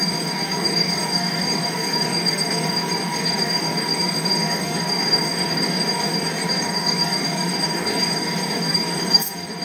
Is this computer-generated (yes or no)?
yes